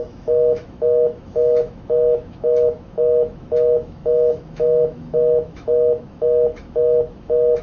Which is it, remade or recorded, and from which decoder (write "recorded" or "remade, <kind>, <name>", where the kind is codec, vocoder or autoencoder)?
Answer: remade, autoencoder, DAC-VAE